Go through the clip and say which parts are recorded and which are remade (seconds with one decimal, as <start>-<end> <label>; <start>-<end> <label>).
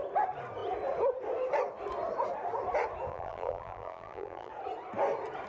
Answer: 0.0-3.1 recorded; 3.1-4.5 remade; 4.5-5.5 recorded